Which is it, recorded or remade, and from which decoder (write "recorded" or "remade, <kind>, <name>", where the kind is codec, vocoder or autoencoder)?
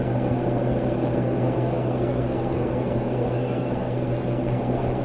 remade, codec, SNAC